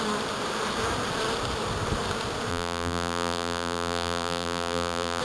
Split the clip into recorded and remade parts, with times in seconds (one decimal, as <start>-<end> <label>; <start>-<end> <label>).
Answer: 0.0-2.5 recorded; 2.5-5.2 remade